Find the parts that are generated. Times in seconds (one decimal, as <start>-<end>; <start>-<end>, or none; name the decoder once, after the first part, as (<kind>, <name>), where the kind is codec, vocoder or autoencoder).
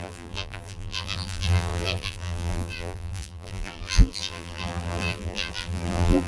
0.0-6.3 (vocoder, BigVGAN v2)